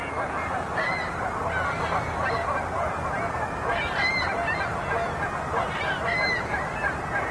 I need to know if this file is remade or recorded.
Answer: recorded